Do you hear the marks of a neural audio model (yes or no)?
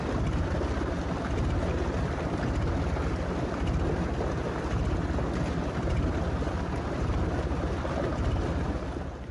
no